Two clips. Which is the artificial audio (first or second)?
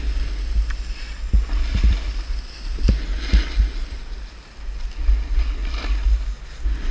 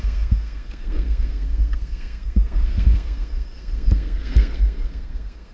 second